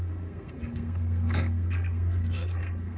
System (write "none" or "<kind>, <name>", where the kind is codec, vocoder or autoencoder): codec, SNAC